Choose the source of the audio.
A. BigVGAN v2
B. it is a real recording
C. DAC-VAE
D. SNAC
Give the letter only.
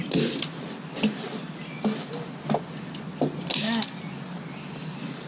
B